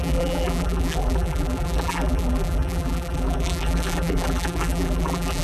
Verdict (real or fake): fake